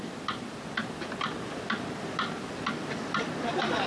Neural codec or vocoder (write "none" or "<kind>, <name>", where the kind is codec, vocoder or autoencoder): none